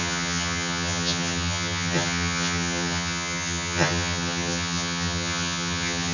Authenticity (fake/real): fake